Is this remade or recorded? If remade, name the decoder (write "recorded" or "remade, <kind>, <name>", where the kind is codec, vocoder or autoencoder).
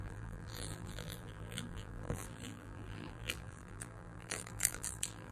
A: remade, vocoder, BigVGAN v2